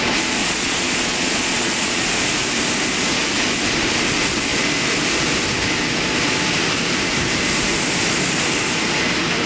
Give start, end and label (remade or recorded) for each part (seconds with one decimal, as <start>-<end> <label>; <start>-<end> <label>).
0.0-0.4 recorded; 0.4-2.0 remade; 2.0-9.5 recorded